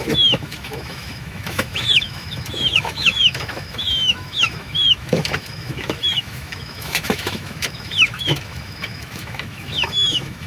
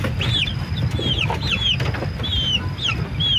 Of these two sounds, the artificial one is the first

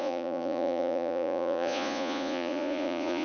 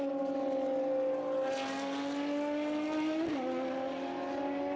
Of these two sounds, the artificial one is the first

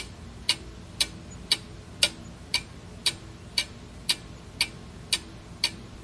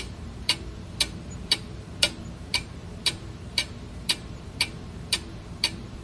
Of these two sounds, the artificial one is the second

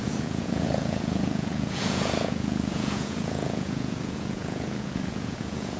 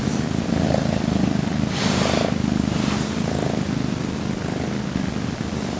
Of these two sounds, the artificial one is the first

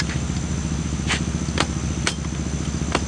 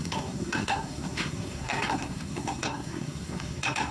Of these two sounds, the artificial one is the second